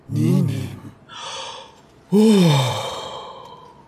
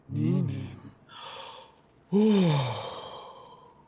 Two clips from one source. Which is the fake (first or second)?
first